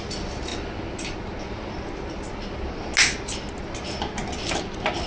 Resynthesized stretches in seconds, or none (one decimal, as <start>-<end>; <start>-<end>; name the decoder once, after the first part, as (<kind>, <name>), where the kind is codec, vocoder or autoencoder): none